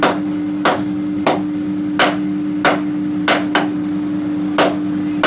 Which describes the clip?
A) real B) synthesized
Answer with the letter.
A